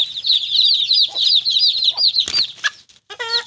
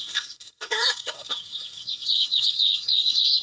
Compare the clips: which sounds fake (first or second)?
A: second